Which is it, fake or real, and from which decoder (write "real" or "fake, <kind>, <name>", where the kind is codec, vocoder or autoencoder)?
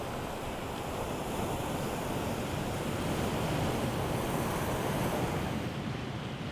real